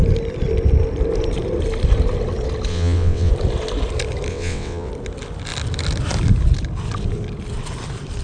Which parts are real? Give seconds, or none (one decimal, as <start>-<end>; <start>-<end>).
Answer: 0.0-2.7; 3.3-4.3; 4.9-8.2